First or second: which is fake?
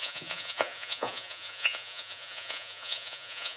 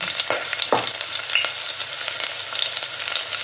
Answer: first